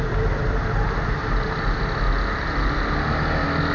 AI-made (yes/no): no